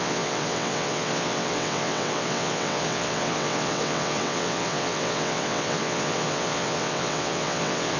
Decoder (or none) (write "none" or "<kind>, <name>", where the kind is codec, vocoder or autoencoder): vocoder, WaveNeXt